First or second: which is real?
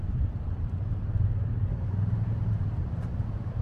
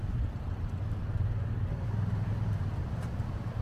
second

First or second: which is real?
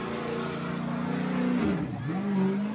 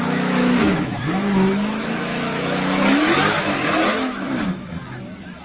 first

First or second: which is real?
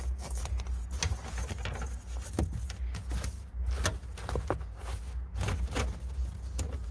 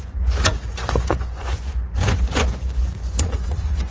first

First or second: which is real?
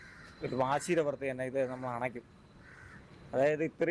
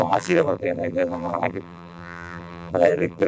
first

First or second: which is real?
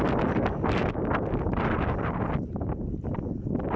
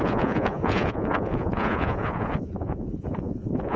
first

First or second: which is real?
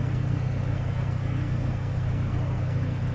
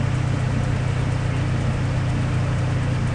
second